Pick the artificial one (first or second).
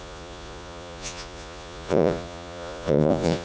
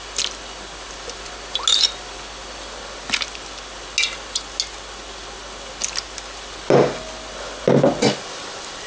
first